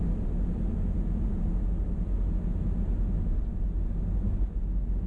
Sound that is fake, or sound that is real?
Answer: real